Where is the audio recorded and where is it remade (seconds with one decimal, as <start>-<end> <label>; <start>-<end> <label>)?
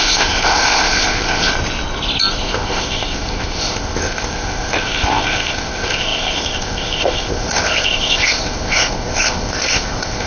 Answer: 0.0-1.5 remade; 1.5-2.3 recorded; 2.3-10.3 remade